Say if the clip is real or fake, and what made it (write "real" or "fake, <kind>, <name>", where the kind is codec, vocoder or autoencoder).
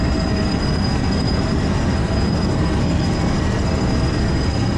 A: fake, codec, SNAC